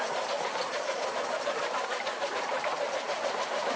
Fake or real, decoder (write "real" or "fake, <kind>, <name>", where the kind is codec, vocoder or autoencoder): real